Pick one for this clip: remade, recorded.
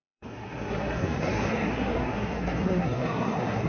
remade